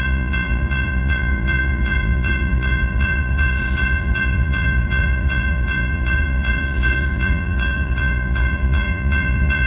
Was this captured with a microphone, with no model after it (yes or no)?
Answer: no